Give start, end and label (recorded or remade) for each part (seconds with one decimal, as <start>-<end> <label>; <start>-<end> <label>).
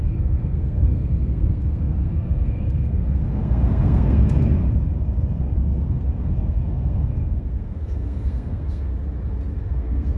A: 0.0-4.6 remade; 4.6-5.4 recorded; 5.4-8.9 remade; 8.9-9.6 recorded; 9.6-10.2 remade